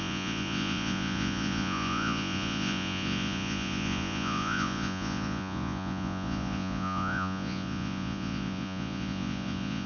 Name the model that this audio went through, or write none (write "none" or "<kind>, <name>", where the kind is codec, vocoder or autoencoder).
vocoder, Vocos